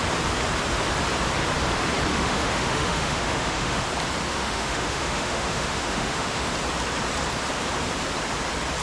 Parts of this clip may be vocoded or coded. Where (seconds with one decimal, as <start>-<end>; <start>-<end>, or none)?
2.1-3.8; 4.3-6.5